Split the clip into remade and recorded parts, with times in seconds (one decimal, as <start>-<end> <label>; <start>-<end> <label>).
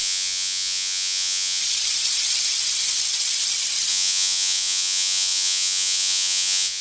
0.0-1.6 remade; 1.6-3.9 recorded; 3.9-6.8 remade